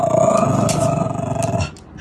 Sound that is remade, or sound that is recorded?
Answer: recorded